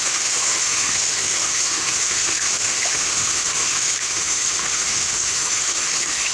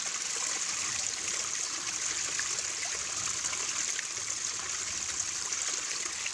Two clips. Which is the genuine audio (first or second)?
second